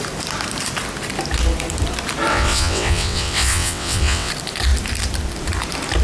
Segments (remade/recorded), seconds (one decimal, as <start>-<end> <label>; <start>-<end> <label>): 0.0-2.3 recorded; 2.3-4.3 remade; 4.3-6.0 recorded